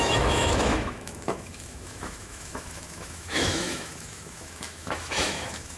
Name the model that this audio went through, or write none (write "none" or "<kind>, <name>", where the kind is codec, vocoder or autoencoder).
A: autoencoder, DAC-VAE